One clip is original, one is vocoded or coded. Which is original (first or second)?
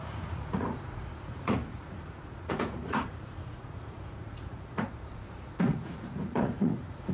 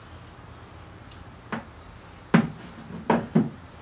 second